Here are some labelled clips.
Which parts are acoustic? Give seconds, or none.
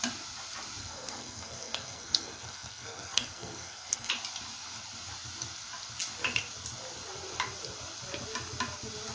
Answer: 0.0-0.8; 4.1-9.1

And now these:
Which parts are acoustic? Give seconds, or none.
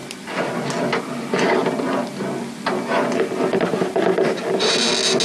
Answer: 0.0-5.2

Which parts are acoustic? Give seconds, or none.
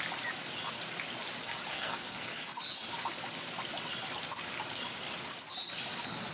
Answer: 0.0-1.7; 2.6-6.3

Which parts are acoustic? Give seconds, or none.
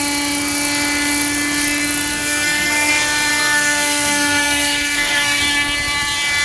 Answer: 0.0-2.1; 2.9-3.3; 5.4-6.4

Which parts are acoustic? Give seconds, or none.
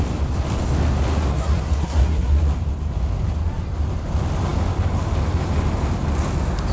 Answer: 0.0-1.3; 2.4-6.7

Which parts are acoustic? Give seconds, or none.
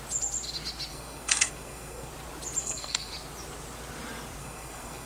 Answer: 0.0-0.9; 2.1-2.6; 3.1-4.4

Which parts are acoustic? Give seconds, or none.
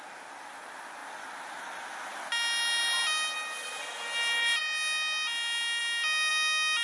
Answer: 0.0-6.8